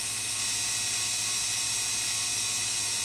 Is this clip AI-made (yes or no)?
no